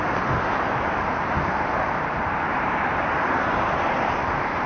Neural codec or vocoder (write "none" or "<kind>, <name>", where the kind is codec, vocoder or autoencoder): vocoder, BigVGAN v2